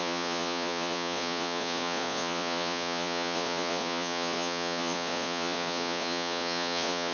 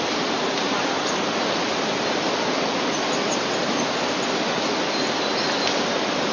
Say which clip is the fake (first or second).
first